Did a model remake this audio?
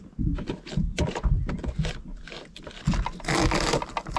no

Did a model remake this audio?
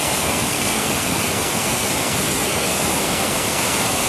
yes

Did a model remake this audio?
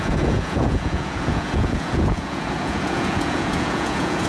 yes